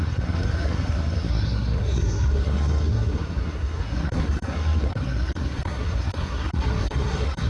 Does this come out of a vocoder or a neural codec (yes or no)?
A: yes